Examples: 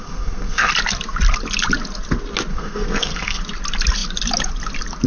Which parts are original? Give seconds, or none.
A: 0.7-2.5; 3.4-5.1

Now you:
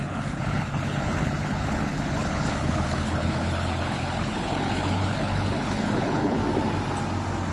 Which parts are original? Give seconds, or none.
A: 6.4-7.5